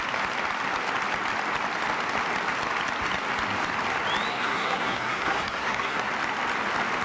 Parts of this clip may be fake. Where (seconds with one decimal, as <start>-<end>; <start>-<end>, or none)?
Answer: 4.3-6.1